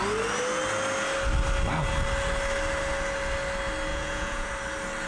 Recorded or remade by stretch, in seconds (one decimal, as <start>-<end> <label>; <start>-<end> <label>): 0.0-3.9 recorded; 3.9-4.5 remade; 4.5-5.1 recorded